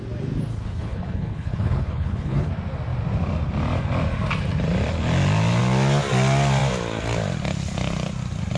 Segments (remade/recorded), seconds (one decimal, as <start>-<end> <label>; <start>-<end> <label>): 0.0-0.5 recorded; 0.5-2.5 remade; 2.5-8.6 recorded